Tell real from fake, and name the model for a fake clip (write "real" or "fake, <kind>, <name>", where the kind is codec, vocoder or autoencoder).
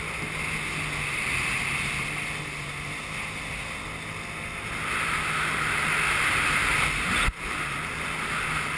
real